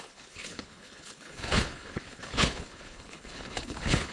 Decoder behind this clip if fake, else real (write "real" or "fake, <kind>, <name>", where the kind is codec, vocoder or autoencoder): fake, codec, HILCodec